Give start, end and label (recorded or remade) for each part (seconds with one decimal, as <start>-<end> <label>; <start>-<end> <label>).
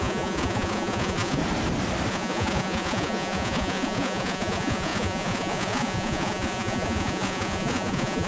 0.0-1.4 remade; 1.4-2.1 recorded; 2.1-8.3 remade